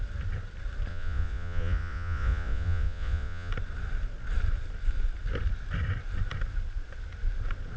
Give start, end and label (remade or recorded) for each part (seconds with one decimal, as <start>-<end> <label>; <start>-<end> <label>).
0.0-0.9 recorded; 0.9-3.5 remade; 3.5-7.8 recorded